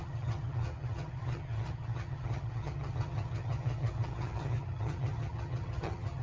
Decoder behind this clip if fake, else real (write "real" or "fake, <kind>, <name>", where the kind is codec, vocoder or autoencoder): fake, vocoder, HiFi-GAN